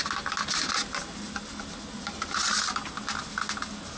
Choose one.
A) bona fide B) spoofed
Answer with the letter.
A